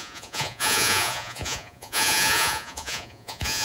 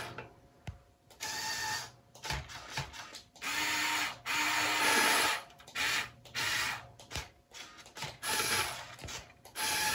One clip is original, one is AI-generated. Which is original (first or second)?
second